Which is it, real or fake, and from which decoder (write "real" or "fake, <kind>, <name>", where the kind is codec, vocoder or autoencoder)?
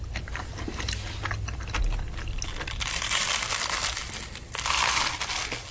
real